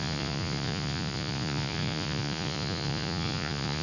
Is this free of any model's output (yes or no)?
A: no